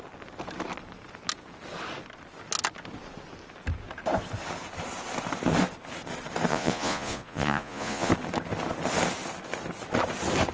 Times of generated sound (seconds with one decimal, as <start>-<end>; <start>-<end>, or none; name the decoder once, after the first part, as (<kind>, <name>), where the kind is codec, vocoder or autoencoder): 6.5-8.1 (vocoder, Vocos)